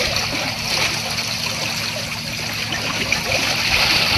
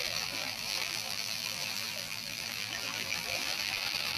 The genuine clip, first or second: first